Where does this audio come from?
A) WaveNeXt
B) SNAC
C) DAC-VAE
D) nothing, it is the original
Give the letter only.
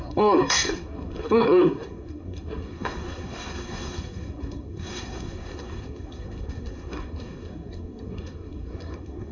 B